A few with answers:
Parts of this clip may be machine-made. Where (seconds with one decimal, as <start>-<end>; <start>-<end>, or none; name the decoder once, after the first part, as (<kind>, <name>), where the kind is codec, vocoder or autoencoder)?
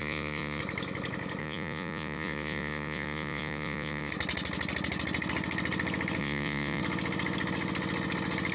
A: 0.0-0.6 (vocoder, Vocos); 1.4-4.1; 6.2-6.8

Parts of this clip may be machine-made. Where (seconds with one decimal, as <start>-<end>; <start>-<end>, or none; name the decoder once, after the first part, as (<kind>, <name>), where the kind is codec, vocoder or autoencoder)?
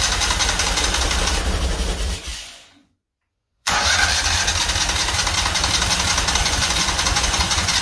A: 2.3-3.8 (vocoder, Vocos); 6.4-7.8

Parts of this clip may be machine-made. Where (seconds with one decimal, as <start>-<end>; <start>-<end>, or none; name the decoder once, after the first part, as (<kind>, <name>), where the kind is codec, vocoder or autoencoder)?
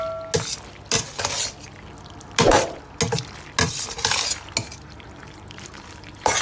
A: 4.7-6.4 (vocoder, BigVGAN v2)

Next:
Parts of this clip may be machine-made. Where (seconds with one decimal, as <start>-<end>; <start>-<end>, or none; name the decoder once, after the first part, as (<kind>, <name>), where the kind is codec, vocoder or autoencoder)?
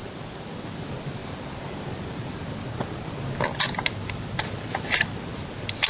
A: none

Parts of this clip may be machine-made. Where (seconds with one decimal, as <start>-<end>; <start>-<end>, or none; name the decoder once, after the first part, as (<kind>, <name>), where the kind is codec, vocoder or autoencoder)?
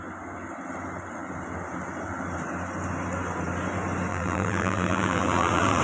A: 4.1-5.8 (vocoder, BigVGAN v2)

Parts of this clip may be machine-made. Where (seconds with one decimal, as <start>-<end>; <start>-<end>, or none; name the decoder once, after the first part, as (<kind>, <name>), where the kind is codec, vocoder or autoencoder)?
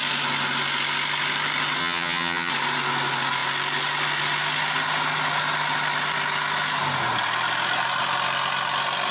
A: 1.8-2.5 (vocoder, HiFi-GAN)